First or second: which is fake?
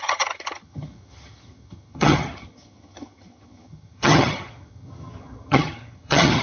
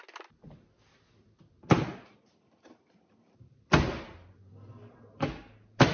first